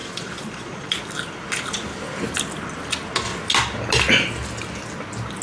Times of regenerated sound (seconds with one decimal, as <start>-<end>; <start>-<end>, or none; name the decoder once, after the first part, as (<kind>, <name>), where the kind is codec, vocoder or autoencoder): 0.0-1.0 (vocoder, Vocos)